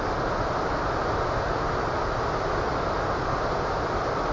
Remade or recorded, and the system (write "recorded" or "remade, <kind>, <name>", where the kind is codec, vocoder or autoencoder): recorded